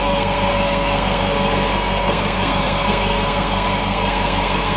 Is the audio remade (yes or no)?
yes